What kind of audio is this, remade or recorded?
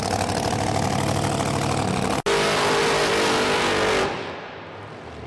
recorded